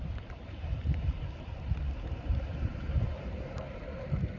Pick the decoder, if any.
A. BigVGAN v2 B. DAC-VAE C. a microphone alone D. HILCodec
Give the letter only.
A